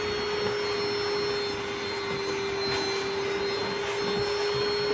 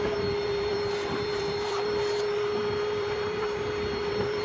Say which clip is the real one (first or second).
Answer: first